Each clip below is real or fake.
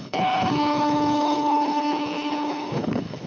fake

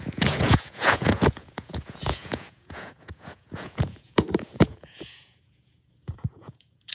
fake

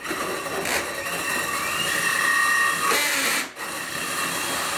real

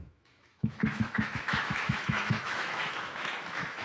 fake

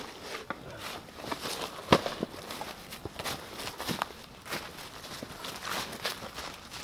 fake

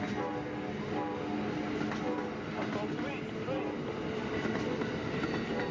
real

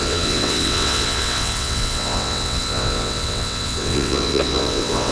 fake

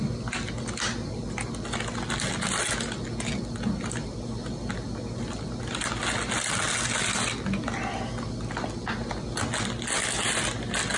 real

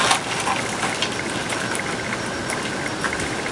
real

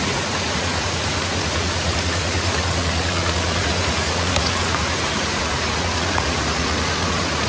fake